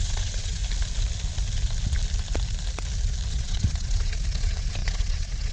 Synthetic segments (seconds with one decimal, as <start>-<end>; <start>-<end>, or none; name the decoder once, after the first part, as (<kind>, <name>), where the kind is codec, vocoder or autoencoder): 0.0-0.6 (vocoder, WaveNeXt); 3.3-5.5